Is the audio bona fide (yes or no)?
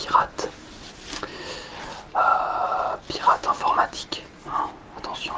yes